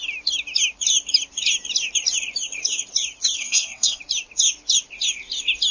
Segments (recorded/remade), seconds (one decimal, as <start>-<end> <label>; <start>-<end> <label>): 0.0-3.4 recorded; 3.4-4.0 remade; 4.0-5.7 recorded